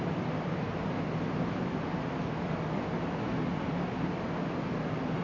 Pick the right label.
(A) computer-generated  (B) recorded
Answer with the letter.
B